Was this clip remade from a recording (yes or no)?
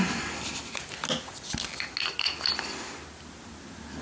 no